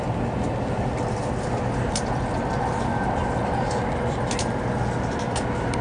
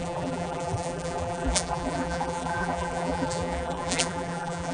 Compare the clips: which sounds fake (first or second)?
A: second